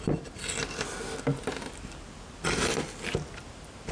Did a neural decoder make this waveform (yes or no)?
no